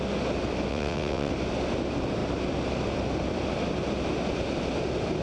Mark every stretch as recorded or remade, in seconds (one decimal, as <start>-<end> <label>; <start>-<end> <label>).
0.0-0.7 recorded; 0.7-1.3 remade; 1.3-5.2 recorded